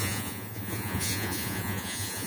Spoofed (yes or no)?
yes